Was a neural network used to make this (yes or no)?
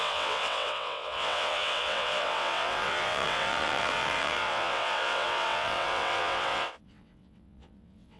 yes